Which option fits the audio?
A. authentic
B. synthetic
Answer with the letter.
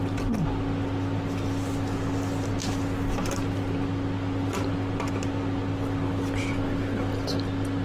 A